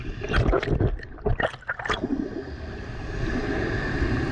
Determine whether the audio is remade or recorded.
recorded